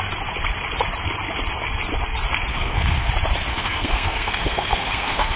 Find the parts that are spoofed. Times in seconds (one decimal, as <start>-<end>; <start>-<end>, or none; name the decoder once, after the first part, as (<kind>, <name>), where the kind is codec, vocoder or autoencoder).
2.5-3.1 (codec, SNAC); 3.5-5.4